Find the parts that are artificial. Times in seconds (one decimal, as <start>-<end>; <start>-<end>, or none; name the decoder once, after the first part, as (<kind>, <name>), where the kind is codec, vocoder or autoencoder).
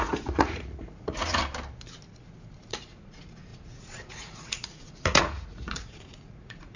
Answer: 0.0-1.4 (vocoder, Vocos); 2.6-6.8